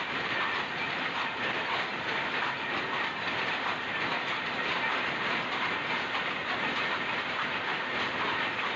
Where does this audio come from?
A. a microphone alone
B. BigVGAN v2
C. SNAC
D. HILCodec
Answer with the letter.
A